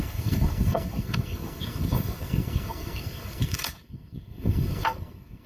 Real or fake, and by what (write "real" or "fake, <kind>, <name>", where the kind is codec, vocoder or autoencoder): fake, codec, SNAC